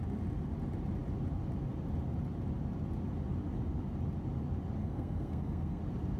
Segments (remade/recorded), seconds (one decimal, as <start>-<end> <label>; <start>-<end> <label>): 0.0-4.8 recorded; 4.8-5.8 remade; 5.8-6.2 recorded